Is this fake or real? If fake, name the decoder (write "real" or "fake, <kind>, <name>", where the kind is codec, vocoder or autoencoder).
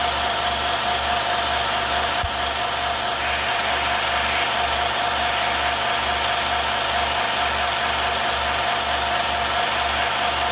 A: real